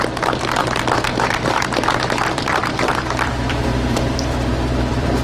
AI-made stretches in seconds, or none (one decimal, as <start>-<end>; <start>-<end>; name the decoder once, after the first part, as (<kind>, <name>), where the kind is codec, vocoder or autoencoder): 0.0-5.2 (vocoder, BigVGAN v2)